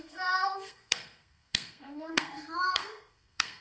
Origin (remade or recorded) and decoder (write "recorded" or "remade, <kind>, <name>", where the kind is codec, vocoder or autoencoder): remade, codec, SNAC